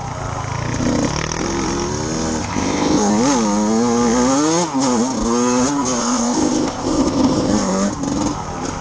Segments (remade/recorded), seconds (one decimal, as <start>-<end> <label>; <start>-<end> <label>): 0.0-2.4 recorded; 2.4-3.1 remade; 3.1-6.0 recorded; 6.0-7.9 remade; 7.9-8.8 recorded